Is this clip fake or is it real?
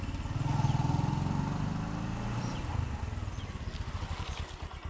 real